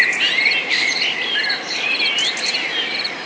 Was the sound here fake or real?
real